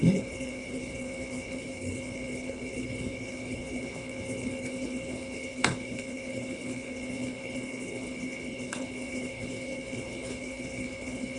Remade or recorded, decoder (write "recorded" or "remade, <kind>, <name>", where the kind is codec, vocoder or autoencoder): remade, codec, HILCodec